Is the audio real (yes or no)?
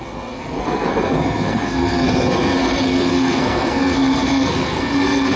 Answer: no